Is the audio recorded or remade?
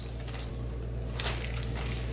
recorded